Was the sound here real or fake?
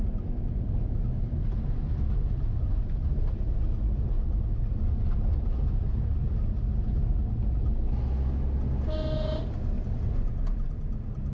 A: real